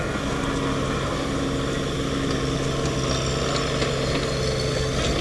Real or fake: real